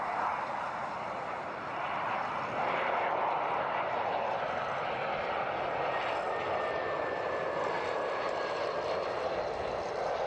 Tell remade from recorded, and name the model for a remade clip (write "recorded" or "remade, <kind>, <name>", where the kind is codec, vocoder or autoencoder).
recorded